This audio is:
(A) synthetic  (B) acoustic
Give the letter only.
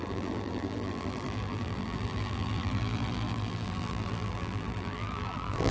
A